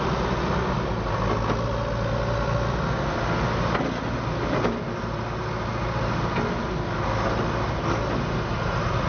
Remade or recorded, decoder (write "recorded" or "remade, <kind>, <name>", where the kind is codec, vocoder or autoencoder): recorded